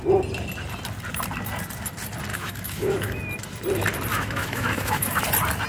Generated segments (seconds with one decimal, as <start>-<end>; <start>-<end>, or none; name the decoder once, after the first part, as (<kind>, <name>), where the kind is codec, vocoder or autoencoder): 2.3-3.2 (autoencoder, DAC-VAE); 4.1-5.2